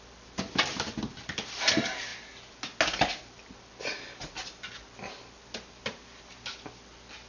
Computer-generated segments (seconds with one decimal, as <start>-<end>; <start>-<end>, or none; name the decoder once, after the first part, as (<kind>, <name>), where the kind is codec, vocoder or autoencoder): none